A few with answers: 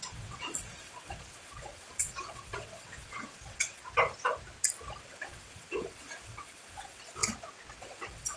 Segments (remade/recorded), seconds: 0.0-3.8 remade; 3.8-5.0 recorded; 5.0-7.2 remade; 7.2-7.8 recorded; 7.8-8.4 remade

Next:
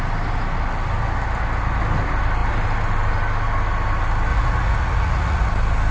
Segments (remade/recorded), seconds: 0.0-4.3 recorded; 4.3-5.5 remade; 5.5-5.9 recorded

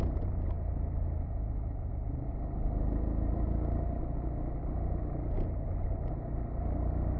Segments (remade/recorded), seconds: 0.0-7.2 recorded

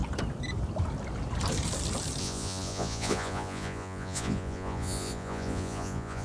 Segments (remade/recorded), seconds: 0.0-2.2 recorded; 2.2-6.2 remade

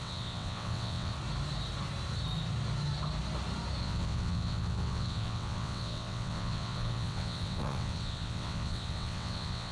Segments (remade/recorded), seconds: 0.0-1.1 remade; 1.1-3.8 recorded; 3.8-9.7 remade